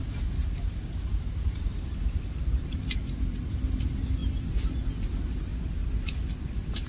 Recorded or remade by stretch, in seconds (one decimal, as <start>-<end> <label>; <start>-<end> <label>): 0.0-4.2 remade; 4.2-5.0 recorded; 5.0-5.5 remade; 5.5-6.5 recorded; 6.5-6.9 remade